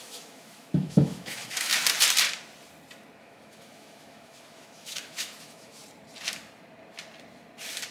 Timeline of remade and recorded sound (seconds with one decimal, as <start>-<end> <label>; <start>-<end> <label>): 0.0-1.7 remade; 1.7-3.2 recorded; 3.2-5.8 remade; 5.8-7.9 recorded